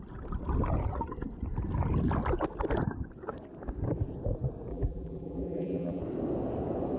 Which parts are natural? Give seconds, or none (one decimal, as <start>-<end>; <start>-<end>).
0.0-4.7; 6.0-7.0